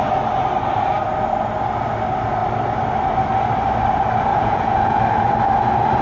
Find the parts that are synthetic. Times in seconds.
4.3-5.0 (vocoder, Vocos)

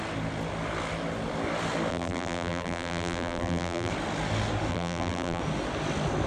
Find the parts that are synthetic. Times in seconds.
1.9-3.9 (vocoder, BigVGAN v2); 4.7-5.4